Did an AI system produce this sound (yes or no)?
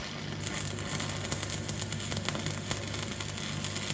no